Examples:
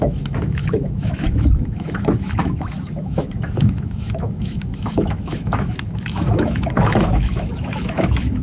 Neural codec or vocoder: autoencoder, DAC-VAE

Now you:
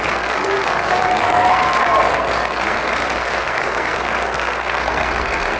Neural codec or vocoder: codec, SNAC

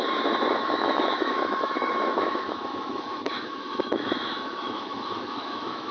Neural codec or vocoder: autoencoder, DAC-VAE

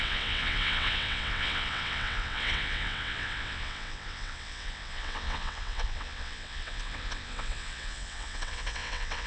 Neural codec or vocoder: vocoder, WaveNeXt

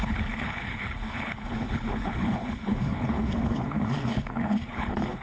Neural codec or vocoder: codec, HILCodec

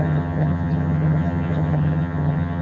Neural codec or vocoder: vocoder, HiFi-GAN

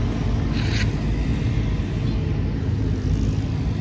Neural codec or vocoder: none